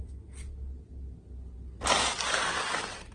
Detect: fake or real real